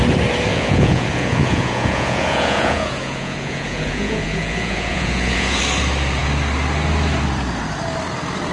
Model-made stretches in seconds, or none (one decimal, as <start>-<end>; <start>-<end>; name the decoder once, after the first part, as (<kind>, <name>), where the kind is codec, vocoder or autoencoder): 0.5-5.6 (vocoder, Vocos)